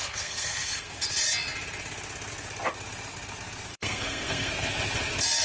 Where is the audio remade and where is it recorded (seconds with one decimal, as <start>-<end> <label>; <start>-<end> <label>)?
0.0-0.9 remade; 0.9-3.7 recorded; 3.7-4.5 remade; 4.5-5.4 recorded